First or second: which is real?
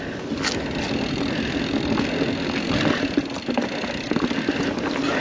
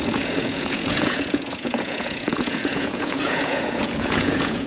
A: first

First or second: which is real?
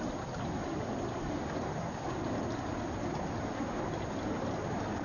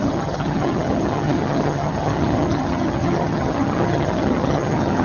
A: first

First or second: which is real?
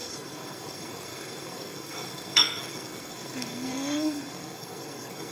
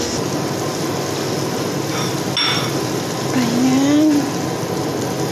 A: second